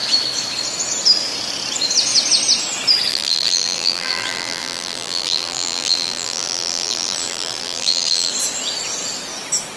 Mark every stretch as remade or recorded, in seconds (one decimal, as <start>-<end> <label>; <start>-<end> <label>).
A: 0.0-3.1 recorded; 3.1-8.3 remade; 8.3-9.8 recorded